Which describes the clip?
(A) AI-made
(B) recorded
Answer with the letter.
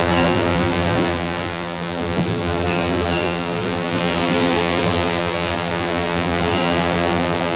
A